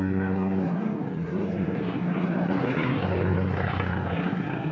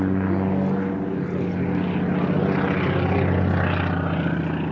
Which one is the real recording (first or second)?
second